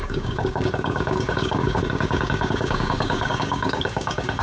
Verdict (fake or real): fake